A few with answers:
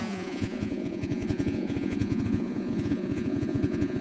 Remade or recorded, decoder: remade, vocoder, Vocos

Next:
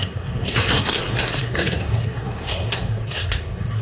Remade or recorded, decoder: remade, codec, SNAC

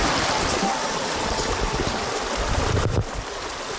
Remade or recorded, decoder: recorded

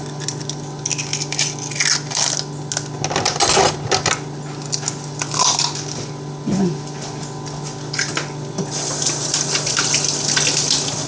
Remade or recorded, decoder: recorded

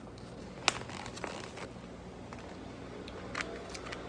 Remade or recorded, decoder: recorded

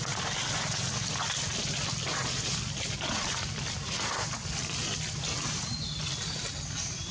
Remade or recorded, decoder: recorded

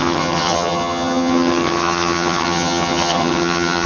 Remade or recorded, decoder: remade, vocoder, HiFi-GAN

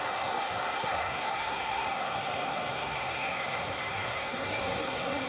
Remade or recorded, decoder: remade, codec, SNAC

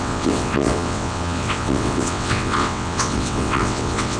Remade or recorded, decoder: remade, vocoder, WaveNeXt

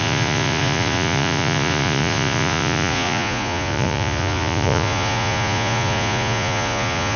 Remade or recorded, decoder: remade, vocoder, Vocos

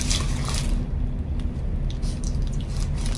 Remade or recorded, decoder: recorded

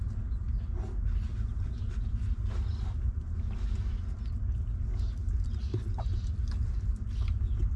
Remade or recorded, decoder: recorded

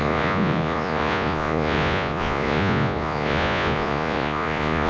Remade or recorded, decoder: remade, vocoder, Vocos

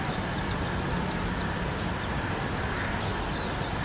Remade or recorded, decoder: remade, vocoder, BigVGAN v2